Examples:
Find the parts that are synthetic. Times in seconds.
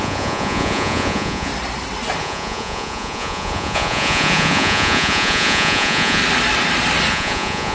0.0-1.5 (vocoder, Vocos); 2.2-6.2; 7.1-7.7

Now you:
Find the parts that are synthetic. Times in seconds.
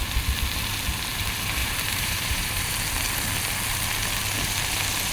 1.6-2.7 (vocoder, BigVGAN v2)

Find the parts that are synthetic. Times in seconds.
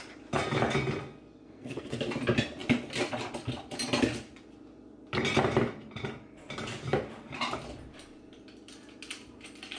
1.4-2.0 (codec, SNAC)